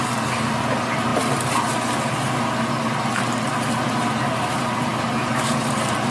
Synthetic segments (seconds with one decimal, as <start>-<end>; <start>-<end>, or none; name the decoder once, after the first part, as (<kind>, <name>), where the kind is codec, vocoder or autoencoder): none